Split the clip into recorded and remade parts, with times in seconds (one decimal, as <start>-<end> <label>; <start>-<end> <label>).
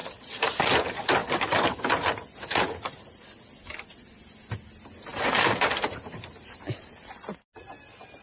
0.0-0.7 remade; 0.7-5.1 recorded; 5.1-7.2 remade; 7.2-8.2 recorded